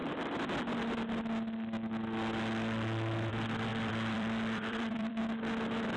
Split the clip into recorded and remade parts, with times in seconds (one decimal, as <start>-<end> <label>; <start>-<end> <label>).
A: 0.0-3.7 recorded; 3.7-5.2 remade; 5.2-6.0 recorded